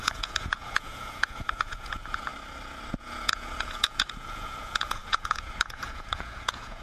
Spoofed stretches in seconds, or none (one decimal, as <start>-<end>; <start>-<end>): 0.0-2.3; 3.0-6.8